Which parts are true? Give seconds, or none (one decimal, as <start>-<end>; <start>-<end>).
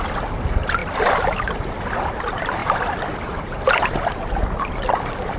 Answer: 0.0-5.4